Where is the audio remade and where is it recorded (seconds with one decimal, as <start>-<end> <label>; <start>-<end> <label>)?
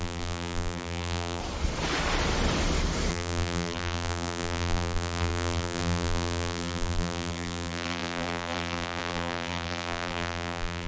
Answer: 0.0-1.4 remade; 1.4-3.1 recorded; 3.1-10.9 remade